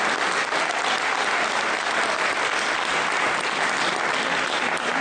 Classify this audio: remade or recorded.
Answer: recorded